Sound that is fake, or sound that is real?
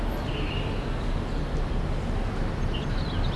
real